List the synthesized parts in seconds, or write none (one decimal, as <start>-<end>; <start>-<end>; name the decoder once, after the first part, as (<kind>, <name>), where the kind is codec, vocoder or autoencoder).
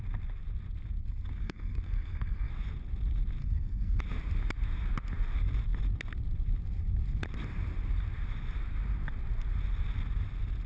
1.4-2.5 (codec, SNAC); 3.4-4.0